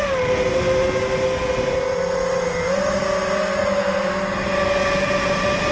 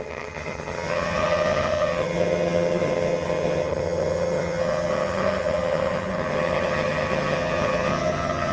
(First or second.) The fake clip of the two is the second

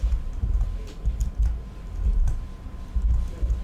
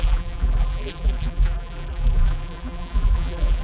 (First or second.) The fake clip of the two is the second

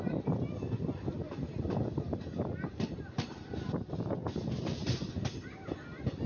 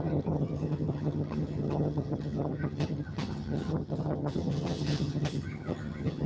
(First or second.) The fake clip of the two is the second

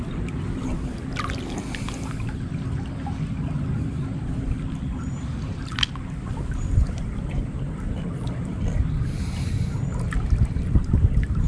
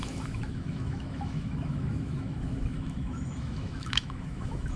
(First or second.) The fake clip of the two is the second